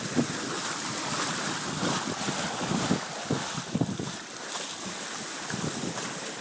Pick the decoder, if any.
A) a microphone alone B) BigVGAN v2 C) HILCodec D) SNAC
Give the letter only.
A